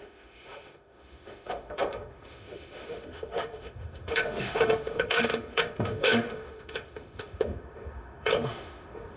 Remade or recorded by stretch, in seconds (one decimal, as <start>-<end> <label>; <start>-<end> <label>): 0.0-9.2 remade